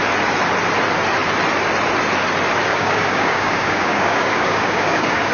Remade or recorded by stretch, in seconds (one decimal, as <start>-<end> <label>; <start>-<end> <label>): 0.0-2.7 recorded; 2.7-5.3 remade